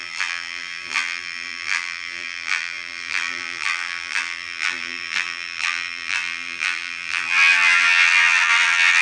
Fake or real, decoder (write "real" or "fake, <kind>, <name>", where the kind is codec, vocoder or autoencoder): fake, vocoder, BigVGAN v2